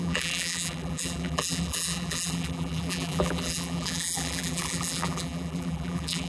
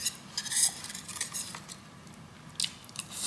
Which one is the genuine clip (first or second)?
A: second